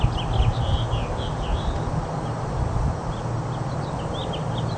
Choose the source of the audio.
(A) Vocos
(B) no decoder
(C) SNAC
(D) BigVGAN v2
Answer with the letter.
B